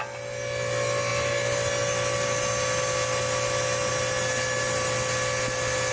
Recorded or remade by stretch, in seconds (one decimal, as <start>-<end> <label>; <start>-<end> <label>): 0.0-5.9 recorded